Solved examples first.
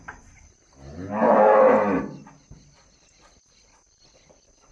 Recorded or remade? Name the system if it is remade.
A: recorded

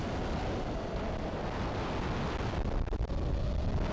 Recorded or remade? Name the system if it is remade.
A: recorded